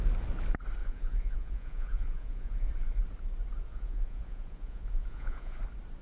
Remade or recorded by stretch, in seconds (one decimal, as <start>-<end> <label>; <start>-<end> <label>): 0.0-0.8 recorded; 0.8-2.7 remade; 2.7-3.7 recorded; 3.7-5.6 remade; 5.6-6.0 recorded